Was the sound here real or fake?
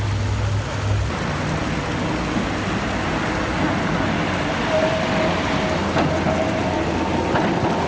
real